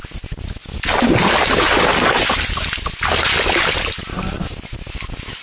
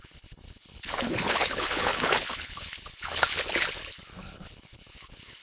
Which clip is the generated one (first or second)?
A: second